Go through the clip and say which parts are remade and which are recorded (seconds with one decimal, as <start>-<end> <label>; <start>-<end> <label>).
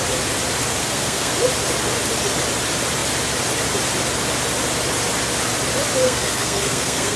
0.0-0.8 recorded; 0.8-1.3 remade; 1.3-6.0 recorded; 6.0-7.2 remade